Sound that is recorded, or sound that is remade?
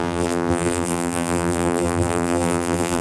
remade